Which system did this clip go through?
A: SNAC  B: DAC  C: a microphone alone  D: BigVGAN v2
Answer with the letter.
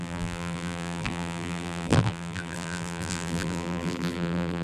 D